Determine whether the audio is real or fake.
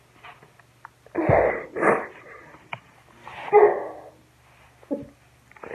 real